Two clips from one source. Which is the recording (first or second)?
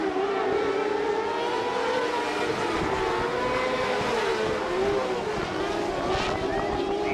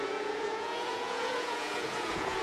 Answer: first